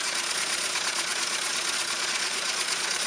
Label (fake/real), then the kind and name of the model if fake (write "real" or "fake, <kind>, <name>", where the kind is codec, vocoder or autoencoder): fake, vocoder, Vocos